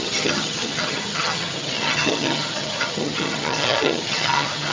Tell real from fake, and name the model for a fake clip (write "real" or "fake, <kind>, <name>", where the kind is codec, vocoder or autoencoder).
fake, vocoder, HiFi-GAN